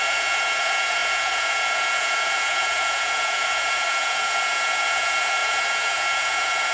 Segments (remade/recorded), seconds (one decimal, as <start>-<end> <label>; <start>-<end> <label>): 0.0-6.7 remade